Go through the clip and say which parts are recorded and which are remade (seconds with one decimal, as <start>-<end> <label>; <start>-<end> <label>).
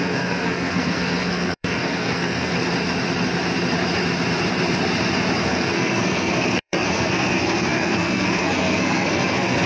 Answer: 0.0-2.5 remade; 2.5-5.4 recorded; 5.4-9.7 remade